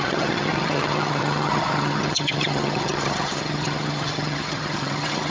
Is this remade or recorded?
remade